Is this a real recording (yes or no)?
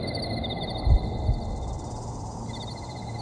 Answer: yes